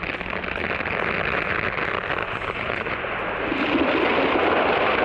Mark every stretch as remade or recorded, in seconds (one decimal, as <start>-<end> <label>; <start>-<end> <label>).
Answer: 0.0-2.2 recorded; 2.2-3.2 remade; 3.2-5.0 recorded